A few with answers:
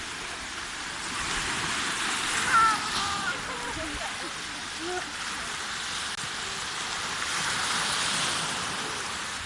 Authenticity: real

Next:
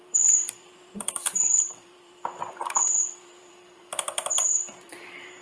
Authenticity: fake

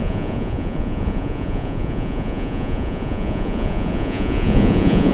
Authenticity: fake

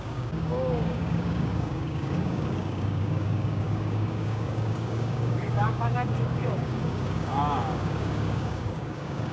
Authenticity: fake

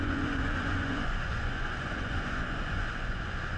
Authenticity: fake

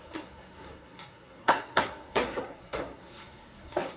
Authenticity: fake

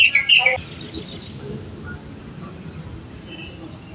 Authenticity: real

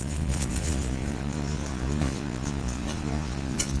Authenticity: fake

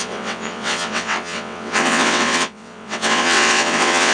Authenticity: fake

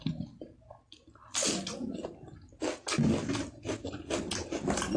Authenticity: real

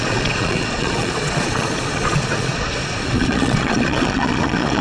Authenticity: fake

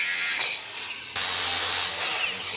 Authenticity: real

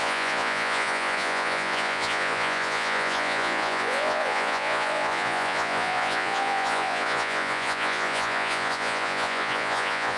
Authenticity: fake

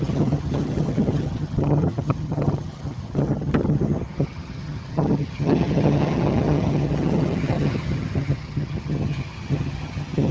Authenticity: fake